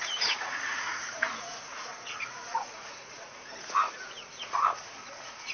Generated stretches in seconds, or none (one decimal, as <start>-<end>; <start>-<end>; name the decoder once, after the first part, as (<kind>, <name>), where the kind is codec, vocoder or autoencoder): 0.0-5.5 (vocoder, Vocos)